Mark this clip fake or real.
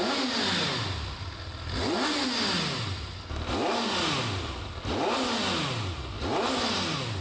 real